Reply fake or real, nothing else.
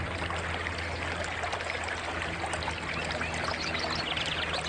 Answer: real